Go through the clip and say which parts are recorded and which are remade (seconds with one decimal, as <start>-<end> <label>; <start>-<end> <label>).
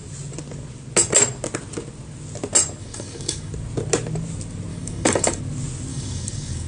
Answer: 0.0-2.8 recorded; 2.8-3.5 remade; 3.5-4.7 recorded; 4.7-5.4 remade; 5.4-5.9 recorded; 5.9-6.7 remade